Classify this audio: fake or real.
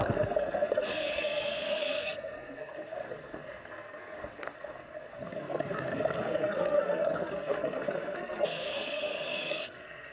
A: fake